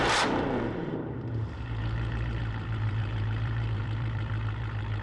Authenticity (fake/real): fake